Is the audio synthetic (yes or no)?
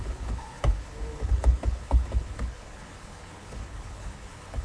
yes